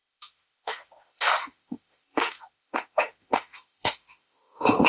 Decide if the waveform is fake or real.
fake